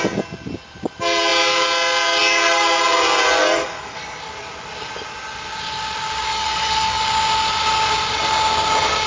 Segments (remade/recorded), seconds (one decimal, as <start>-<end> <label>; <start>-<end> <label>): 0.0-3.4 recorded; 3.4-4.0 remade; 4.0-6.3 recorded; 6.3-7.0 remade; 7.0-9.1 recorded